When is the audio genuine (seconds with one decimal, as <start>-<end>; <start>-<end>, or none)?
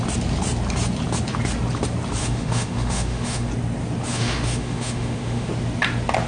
0.0-2.2; 3.5-4.1; 5.5-6.3